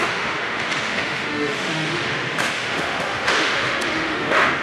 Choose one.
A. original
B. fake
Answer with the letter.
B